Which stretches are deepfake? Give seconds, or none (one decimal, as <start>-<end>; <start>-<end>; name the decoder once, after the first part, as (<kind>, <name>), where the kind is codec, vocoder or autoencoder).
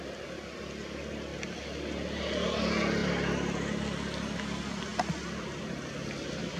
3.0-3.5 (vocoder, BigVGAN v2)